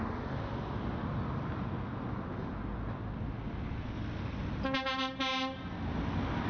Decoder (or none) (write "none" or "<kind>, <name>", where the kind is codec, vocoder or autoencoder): none